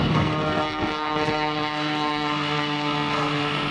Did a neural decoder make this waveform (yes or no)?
yes